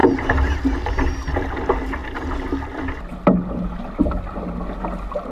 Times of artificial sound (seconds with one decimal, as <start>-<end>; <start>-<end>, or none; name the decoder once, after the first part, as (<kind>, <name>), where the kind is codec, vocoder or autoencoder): none